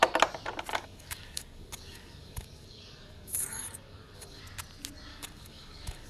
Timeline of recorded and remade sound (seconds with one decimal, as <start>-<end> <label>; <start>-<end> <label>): 0.0-0.7 recorded; 0.7-4.4 remade; 4.4-5.1 recorded; 5.1-6.1 remade